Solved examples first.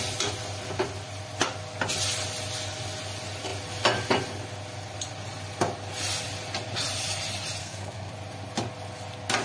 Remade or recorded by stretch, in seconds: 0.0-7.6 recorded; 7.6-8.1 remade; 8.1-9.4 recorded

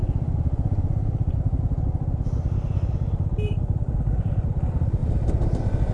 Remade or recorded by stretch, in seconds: 0.0-1.8 remade; 1.8-5.0 recorded; 5.0-5.9 remade

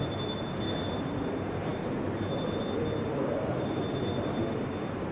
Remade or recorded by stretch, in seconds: 0.0-5.1 remade